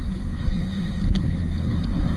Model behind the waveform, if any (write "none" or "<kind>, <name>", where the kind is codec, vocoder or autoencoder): codec, SNAC